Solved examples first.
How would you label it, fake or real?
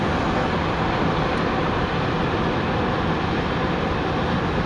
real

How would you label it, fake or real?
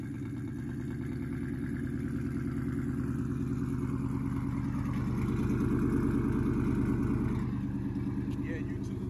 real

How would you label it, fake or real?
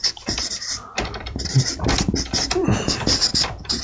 fake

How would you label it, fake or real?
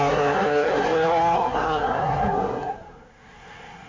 fake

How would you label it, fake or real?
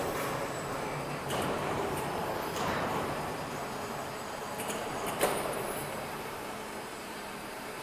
fake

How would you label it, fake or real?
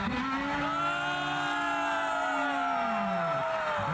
real